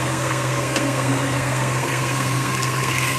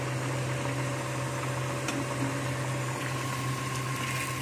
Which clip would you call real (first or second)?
second